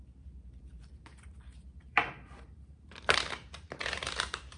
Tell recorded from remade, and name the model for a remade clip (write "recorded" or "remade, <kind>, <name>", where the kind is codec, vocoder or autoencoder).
remade, vocoder, BigVGAN v2